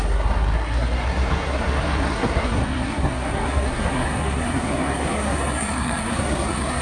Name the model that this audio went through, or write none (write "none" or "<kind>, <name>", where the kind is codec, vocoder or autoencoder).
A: codec, SNAC